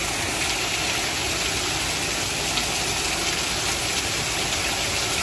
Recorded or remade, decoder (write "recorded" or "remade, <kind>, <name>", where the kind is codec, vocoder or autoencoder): recorded